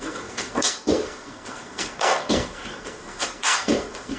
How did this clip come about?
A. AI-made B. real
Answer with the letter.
A